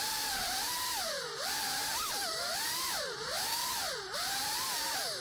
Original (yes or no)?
no